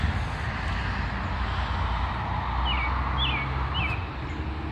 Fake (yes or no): no